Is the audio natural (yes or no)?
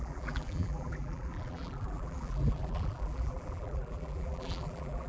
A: no